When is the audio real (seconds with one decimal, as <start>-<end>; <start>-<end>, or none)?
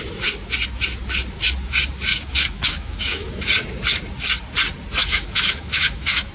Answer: 0.0-2.1; 3.3-5.0